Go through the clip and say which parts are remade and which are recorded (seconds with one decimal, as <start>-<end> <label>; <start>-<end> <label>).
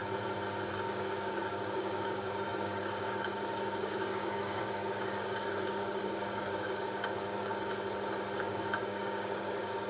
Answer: 0.0-0.7 recorded; 0.7-7.5 remade; 7.5-8.4 recorded; 8.4-9.9 remade